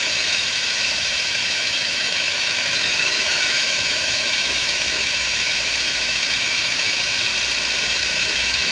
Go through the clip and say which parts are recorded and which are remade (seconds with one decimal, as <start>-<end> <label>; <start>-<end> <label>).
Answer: 0.0-7.3 remade; 7.3-7.8 recorded; 7.8-8.7 remade